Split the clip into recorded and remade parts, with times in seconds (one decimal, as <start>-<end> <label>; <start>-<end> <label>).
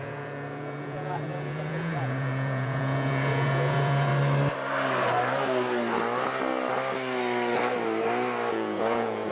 0.0-4.1 remade; 4.1-8.5 recorded; 8.5-9.3 remade